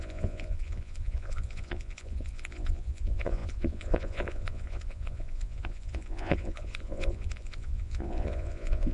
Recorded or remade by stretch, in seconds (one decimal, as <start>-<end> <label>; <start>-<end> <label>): 0.0-8.9 remade